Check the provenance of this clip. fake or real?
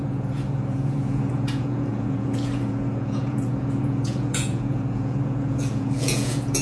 fake